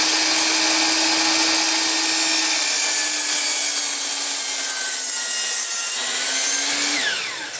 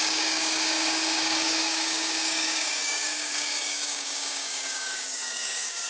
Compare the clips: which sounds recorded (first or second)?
first